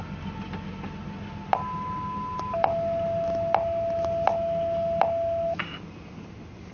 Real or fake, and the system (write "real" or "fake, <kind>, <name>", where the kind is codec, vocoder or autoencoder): real